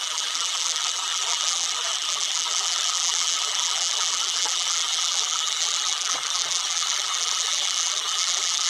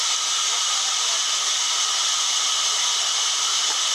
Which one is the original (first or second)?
second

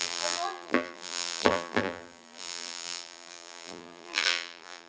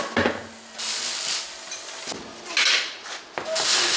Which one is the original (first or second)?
second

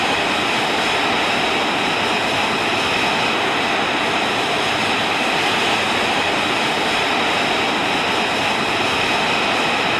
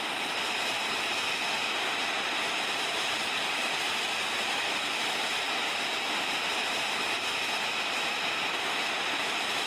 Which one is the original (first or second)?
first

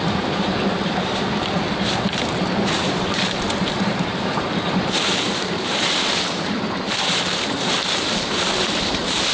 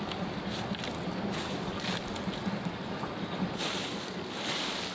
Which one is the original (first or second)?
second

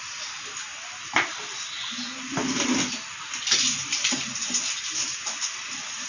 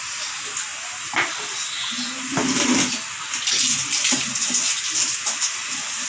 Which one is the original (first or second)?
second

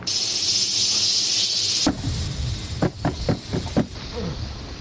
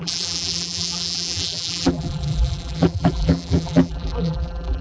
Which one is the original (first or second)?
first